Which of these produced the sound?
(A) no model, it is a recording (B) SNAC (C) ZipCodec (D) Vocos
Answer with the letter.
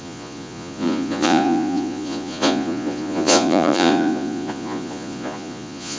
D